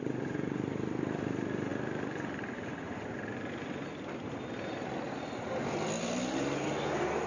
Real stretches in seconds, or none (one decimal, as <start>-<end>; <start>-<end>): 0.0-7.3